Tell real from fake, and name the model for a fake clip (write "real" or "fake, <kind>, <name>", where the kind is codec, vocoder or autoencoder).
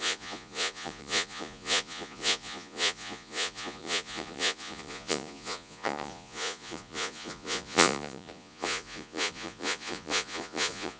fake, vocoder, Vocos